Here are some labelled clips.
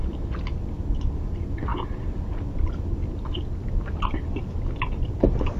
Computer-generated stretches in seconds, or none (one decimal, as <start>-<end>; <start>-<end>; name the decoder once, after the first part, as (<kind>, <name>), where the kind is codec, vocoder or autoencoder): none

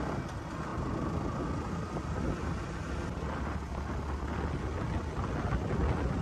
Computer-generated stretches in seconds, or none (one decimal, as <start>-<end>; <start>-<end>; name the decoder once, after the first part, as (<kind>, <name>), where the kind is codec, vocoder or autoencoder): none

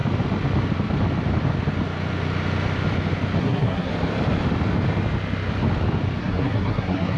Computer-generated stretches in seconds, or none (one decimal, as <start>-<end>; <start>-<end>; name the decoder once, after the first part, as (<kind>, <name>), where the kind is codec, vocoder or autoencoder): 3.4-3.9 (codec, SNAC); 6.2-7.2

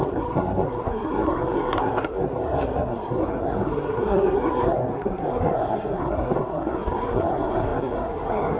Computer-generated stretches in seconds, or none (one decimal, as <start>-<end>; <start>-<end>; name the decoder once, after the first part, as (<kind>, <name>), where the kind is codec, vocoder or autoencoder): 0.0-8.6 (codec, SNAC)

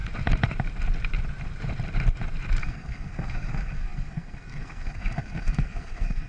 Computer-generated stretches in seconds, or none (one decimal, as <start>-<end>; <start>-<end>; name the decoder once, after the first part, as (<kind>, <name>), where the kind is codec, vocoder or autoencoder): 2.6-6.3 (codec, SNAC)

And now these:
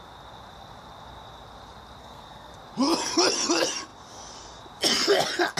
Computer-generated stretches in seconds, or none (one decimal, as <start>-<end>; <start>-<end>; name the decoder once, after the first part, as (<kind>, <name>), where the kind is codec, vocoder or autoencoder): 2.0-2.5 (codec, SNAC)

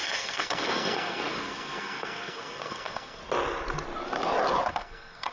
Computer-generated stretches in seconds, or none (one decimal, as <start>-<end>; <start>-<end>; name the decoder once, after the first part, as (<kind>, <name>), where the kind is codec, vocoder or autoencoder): 0.0-3.2 (codec, SNAC); 4.7-5.3